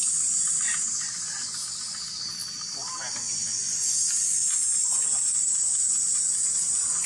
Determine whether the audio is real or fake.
real